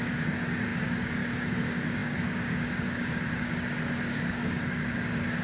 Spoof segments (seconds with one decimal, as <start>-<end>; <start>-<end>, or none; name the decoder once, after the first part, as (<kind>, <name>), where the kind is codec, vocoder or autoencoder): 0.0-5.4 (codec, DAC)